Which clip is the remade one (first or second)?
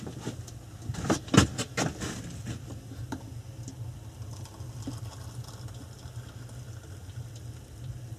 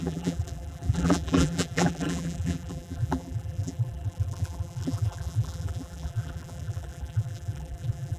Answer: second